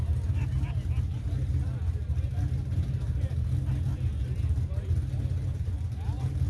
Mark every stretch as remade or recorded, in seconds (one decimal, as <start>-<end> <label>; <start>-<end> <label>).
0.0-6.5 recorded